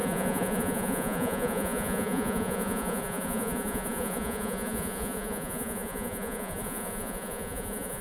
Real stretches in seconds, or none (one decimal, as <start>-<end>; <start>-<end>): none